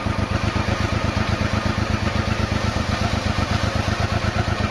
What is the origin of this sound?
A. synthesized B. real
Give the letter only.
B